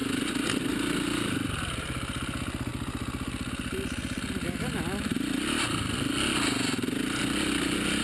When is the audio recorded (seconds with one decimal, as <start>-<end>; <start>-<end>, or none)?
0.0-8.0